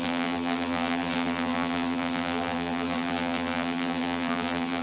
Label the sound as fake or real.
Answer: fake